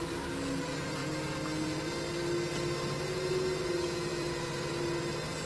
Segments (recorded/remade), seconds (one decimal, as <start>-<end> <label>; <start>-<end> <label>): 0.0-4.1 recorded; 4.1-5.0 remade; 5.0-5.5 recorded